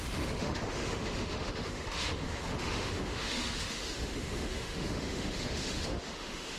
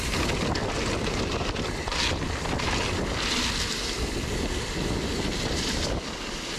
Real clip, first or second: second